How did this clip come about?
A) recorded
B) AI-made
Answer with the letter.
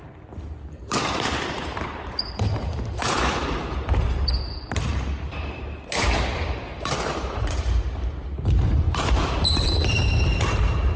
B